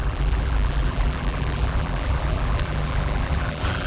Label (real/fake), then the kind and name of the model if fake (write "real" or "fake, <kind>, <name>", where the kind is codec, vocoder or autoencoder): fake, vocoder, BigVGAN v2